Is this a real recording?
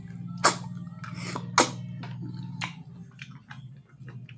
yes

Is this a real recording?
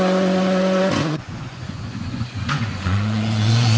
no